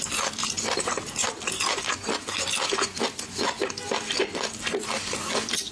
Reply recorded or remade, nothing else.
recorded